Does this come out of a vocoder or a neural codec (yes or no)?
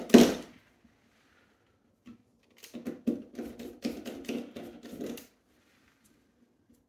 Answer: no